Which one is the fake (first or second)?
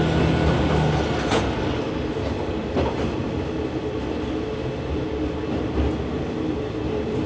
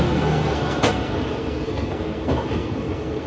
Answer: second